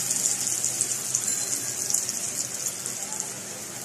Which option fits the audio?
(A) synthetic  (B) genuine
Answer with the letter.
B